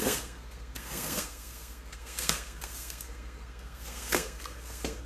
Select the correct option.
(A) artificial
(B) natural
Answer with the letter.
A